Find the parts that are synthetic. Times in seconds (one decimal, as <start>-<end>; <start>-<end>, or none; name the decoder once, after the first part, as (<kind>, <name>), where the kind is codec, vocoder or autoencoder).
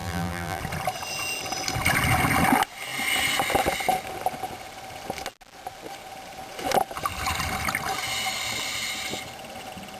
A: 0.0-0.6 (vocoder, BigVGAN v2)